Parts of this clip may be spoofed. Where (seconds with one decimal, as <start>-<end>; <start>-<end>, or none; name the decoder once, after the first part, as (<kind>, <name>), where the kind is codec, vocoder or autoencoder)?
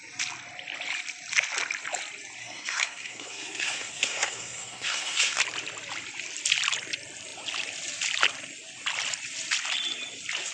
2.4-5.4 (codec, SNAC)